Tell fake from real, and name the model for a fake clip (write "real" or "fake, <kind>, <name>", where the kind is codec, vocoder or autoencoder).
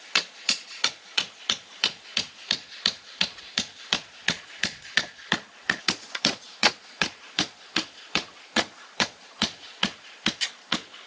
fake, vocoder, Vocos